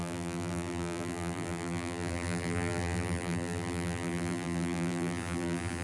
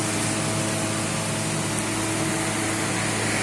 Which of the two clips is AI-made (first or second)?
first